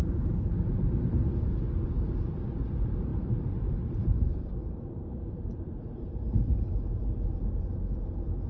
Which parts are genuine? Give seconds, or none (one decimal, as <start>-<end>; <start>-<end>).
none